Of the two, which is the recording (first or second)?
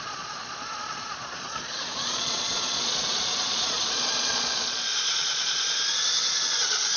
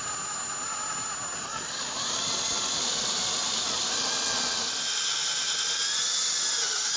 second